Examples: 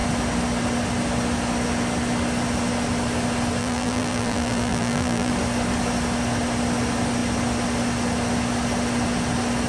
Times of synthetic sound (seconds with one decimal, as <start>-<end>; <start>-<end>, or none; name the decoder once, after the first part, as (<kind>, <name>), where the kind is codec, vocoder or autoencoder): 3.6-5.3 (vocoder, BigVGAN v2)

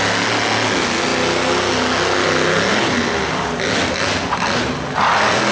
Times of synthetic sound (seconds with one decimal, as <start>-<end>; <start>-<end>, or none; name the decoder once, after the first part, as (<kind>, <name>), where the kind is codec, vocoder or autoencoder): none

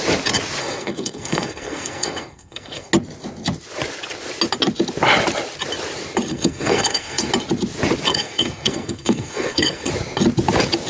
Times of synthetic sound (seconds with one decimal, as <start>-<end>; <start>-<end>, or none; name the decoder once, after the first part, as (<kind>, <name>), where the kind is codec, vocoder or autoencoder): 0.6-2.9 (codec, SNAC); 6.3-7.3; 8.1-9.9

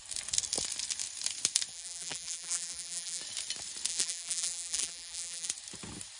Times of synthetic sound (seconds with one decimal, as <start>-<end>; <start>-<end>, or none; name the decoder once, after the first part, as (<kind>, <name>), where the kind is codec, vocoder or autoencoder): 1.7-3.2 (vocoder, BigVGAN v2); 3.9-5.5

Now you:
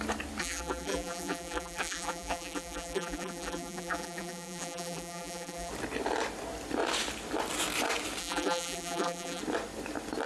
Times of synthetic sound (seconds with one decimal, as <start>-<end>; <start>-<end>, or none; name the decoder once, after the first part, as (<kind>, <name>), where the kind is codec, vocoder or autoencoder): 0.4-5.7 (vocoder, BigVGAN v2); 8.2-9.4

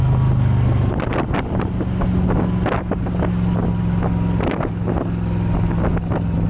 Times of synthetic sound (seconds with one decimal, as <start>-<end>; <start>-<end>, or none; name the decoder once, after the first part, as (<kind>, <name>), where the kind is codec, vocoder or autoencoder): none